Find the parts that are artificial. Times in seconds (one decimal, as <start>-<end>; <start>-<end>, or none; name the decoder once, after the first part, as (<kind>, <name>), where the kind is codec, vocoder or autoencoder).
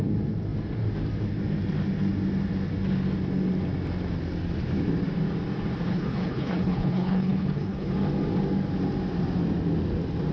5.9-7.9 (codec, HILCodec)